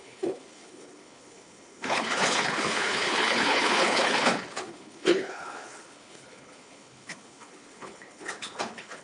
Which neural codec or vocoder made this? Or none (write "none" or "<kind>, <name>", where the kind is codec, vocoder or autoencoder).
codec, HILCodec